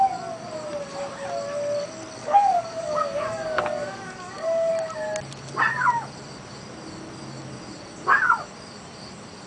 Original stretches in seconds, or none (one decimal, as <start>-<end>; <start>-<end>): 0.0-2.2; 4.7-9.5